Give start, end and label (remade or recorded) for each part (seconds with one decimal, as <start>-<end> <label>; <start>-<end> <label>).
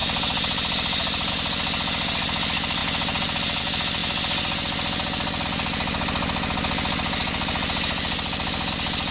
0.0-1.3 remade; 1.3-9.1 recorded